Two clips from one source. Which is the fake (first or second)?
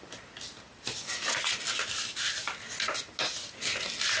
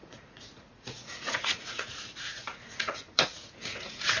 second